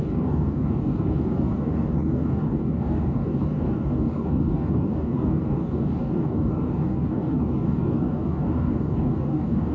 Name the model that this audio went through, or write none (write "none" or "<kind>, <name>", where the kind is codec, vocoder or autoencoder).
codec, DAC